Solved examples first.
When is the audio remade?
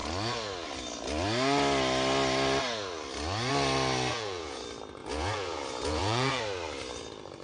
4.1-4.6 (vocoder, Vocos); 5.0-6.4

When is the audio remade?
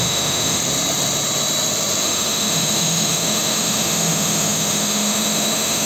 0.0-0.6 (autoencoder, DAC-VAE); 2.0-5.9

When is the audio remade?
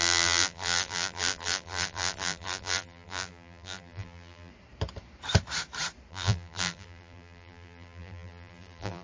0.0-4.5 (vocoder, BigVGAN v2); 6.1-9.0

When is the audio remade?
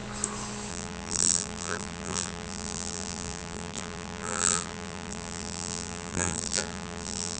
0.7-7.4 (vocoder, BigVGAN v2)